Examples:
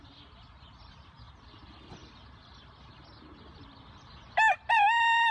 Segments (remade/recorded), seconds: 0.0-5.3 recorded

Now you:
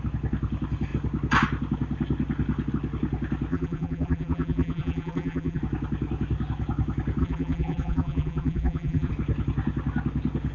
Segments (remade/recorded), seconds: 0.0-3.5 recorded; 3.5-5.6 remade; 5.6-7.2 recorded; 7.2-9.1 remade; 9.1-10.5 recorded

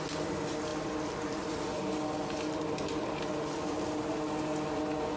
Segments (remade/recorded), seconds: 0.0-0.7 recorded; 0.7-1.6 remade; 1.6-5.2 recorded

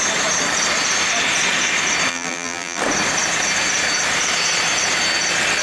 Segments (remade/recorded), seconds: 0.0-2.1 recorded; 2.1-2.8 remade; 2.8-5.6 recorded